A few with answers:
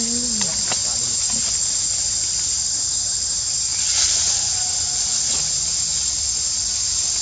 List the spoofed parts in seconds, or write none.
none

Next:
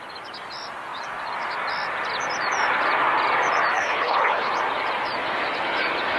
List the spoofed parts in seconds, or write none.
3.7-4.5 (codec, HILCodec)

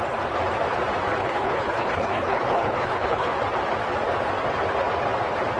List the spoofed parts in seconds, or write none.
1.2-3.3 (codec, HILCodec)

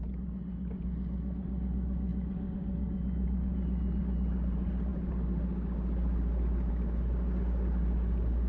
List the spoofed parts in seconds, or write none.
none

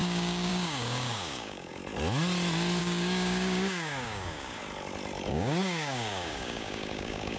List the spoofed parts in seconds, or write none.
0.0-1.8 (codec, DAC); 2.8-4.6; 5.3-7.4